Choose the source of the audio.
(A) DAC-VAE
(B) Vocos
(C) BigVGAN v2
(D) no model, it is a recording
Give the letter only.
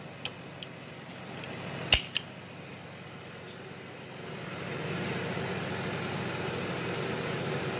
D